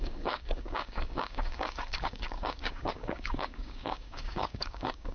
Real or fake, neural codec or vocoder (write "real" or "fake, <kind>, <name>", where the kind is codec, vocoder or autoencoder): fake, codec, DAC